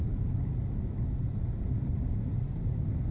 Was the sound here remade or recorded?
recorded